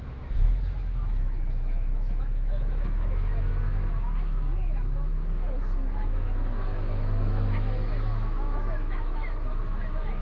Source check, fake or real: fake